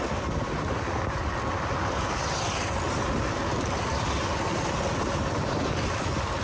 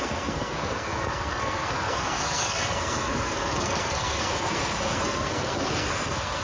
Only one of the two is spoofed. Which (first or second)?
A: second